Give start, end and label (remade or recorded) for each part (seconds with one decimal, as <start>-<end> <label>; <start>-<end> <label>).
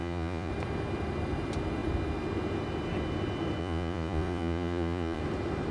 0.0-0.5 remade; 0.5-3.6 recorded; 3.6-5.2 remade; 5.2-5.7 recorded